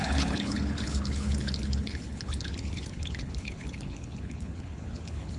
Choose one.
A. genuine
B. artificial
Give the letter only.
B